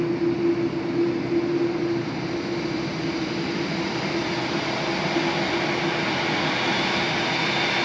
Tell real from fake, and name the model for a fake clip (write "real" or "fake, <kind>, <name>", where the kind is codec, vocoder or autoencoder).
real